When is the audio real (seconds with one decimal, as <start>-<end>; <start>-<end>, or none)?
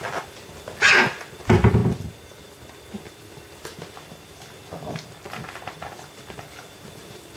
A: 0.0-7.4